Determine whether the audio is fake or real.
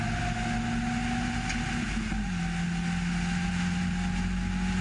real